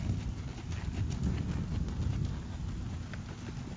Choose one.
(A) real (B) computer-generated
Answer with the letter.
A